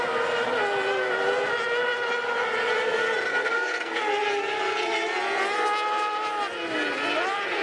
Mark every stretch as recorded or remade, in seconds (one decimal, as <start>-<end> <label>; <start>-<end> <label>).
0.0-3.3 recorded; 3.3-4.0 remade; 4.0-7.6 recorded